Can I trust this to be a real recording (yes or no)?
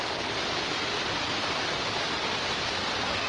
yes